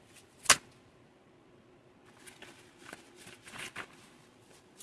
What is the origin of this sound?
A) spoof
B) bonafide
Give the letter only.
B